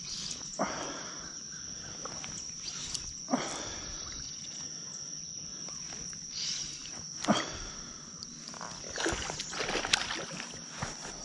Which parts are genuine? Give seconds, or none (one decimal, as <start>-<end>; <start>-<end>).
0.0-11.2